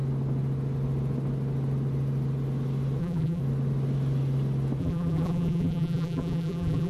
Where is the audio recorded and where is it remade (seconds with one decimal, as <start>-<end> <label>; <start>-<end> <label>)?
0.0-3.0 recorded; 3.0-3.4 remade; 3.4-4.8 recorded; 4.8-6.9 remade